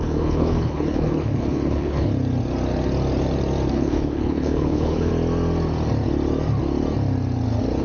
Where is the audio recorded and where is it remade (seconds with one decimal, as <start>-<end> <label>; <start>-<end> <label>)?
0.0-2.1 remade; 2.1-3.7 recorded; 3.7-5.1 remade; 5.1-7.8 recorded